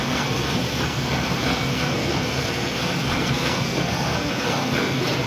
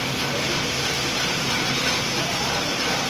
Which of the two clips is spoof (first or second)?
first